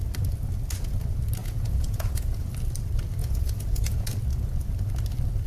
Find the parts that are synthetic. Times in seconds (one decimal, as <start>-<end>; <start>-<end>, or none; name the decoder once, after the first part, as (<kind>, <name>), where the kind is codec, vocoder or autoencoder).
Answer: 1.4-2.5 (vocoder, Vocos); 3.2-4.1